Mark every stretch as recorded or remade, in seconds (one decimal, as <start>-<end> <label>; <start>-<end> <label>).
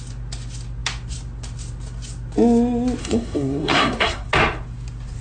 0.0-3.0 recorded; 3.0-4.3 remade; 4.3-5.2 recorded